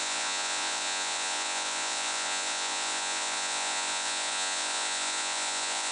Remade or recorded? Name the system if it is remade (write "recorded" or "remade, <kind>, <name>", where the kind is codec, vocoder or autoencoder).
remade, vocoder, Vocos